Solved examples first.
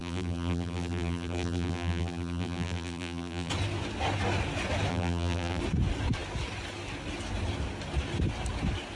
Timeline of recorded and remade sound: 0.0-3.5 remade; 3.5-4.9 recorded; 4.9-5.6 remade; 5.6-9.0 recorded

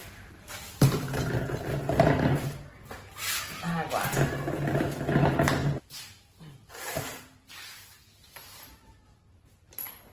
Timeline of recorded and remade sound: 0.0-1.3 remade; 1.3-5.6 recorded; 5.6-9.7 remade; 9.7-10.1 recorded

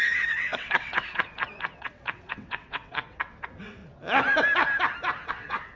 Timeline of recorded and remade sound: 0.0-3.8 remade; 3.8-5.3 recorded; 5.3-5.8 remade

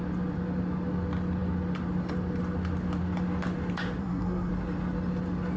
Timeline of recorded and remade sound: 0.0-4.0 recorded; 4.0-4.5 remade; 4.5-5.6 recorded

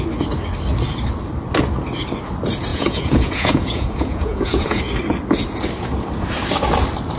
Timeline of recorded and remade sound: 0.0-2.7 recorded; 2.7-4.8 remade; 4.8-7.2 recorded

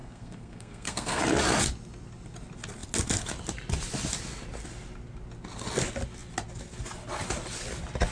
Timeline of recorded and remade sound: 0.0-1.2 remade; 1.2-8.1 recorded